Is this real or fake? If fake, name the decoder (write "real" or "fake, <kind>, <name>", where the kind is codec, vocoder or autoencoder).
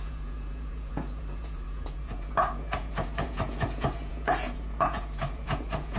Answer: fake, vocoder, Vocos